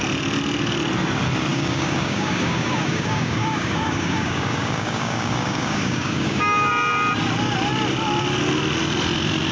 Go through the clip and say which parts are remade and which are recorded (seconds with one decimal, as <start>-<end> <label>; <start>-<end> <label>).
0.0-1.5 recorded; 1.5-6.7 remade; 6.7-9.5 recorded